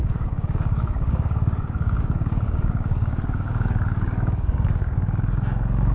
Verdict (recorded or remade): remade